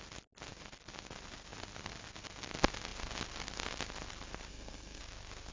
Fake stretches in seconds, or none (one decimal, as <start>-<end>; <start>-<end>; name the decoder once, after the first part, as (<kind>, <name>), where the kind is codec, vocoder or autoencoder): 4.5-5.0 (codec, SNAC)